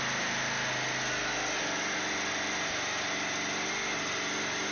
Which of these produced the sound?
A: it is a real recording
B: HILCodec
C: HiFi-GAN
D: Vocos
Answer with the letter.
A